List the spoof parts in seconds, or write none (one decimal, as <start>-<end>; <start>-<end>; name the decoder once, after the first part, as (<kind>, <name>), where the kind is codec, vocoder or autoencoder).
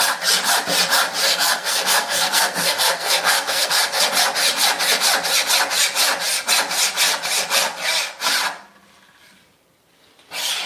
1.3-4.0 (codec, SNAC)